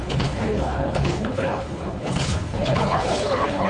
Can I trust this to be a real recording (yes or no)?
no